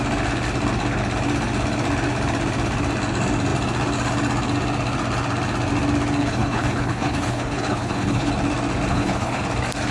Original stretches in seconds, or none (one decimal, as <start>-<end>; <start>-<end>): 0.0-6.2; 8.3-8.9; 9.4-9.9